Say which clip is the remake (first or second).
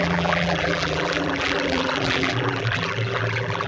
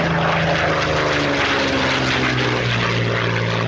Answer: first